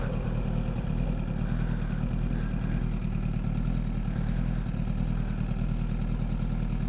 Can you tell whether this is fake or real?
real